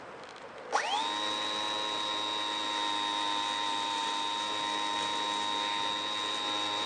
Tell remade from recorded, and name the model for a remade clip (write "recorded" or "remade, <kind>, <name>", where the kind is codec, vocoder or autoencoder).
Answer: recorded